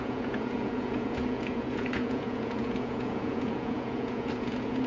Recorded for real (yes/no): no